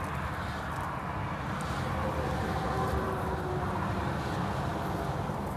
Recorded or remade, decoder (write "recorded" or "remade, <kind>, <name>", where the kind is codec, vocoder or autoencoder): recorded